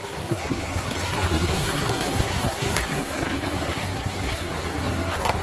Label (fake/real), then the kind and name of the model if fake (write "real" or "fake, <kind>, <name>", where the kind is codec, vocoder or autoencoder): fake, codec, SNAC